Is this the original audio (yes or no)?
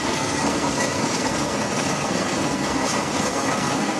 no